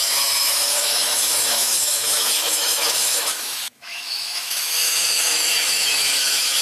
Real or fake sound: fake